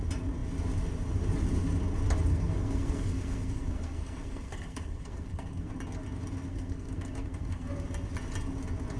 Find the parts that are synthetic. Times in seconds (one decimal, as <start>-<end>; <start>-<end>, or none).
2.3-5.7; 6.5-7.7